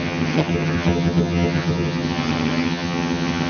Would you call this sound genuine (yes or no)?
no